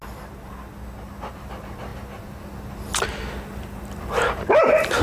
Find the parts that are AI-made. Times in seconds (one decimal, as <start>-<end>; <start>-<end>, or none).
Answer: none